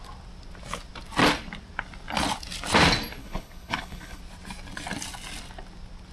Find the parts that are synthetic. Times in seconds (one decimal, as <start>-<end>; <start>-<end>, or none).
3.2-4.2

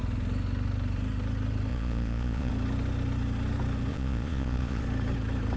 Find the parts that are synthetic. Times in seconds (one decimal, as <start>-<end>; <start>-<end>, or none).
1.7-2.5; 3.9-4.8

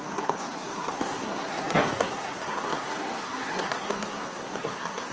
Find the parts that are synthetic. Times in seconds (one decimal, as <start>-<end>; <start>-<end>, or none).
0.0-5.1